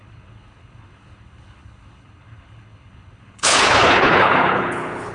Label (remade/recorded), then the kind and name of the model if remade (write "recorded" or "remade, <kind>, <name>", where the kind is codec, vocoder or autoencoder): remade, codec, HILCodec